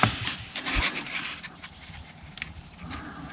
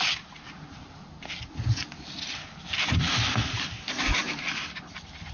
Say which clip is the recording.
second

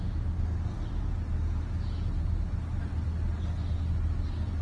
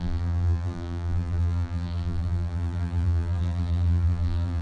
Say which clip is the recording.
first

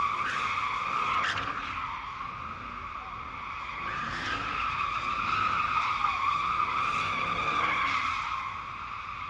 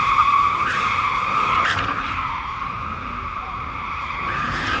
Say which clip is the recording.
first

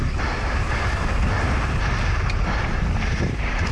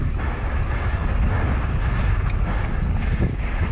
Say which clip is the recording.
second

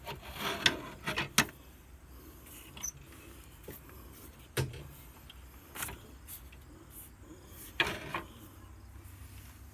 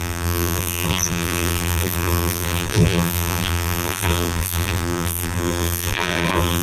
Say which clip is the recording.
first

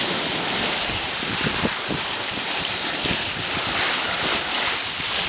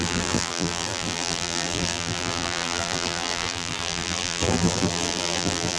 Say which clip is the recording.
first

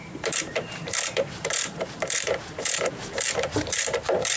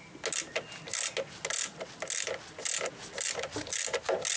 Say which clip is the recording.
second